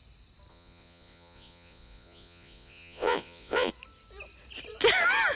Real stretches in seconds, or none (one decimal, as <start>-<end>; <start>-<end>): 0.0-0.5; 3.7-5.4